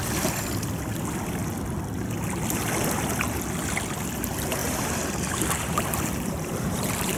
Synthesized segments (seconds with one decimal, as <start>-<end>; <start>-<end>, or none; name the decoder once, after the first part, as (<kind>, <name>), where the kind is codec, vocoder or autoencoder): 4.6-7.2 (vocoder, BigVGAN v2)

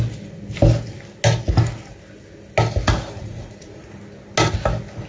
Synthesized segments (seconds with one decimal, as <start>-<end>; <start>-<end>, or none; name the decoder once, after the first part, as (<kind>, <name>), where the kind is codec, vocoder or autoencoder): 3.2-4.0 (vocoder, Vocos)